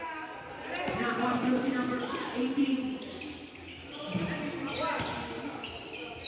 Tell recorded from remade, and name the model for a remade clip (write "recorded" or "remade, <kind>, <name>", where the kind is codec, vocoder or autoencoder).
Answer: recorded